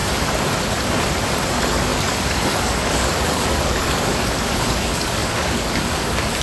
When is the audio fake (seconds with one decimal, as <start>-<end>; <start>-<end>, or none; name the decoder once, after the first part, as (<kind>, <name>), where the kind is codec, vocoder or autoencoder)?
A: 1.5-6.4 (codec, DAC)